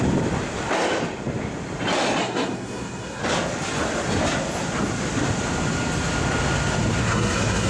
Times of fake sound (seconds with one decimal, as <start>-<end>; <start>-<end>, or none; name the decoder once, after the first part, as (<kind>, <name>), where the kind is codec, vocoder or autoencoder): 2.2-3.2 (codec, SNAC); 7.0-7.7